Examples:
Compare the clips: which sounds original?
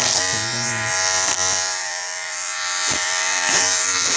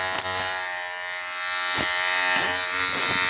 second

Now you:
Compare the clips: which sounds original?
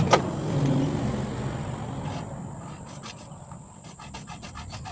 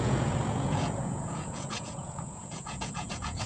first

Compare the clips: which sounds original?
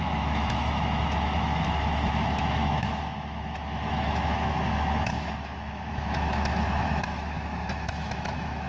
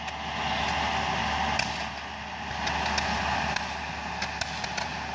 second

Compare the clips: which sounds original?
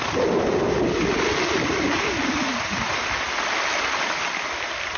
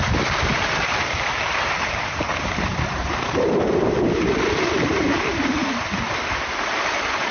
first